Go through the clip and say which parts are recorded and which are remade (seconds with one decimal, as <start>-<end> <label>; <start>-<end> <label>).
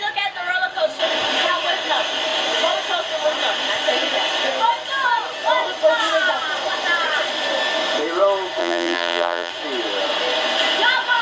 0.0-8.6 recorded; 8.6-9.5 remade; 9.5-11.2 recorded